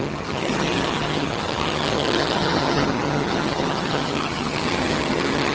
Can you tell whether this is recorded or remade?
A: remade